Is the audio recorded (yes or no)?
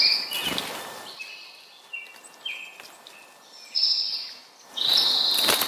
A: yes